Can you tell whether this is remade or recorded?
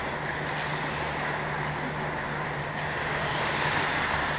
recorded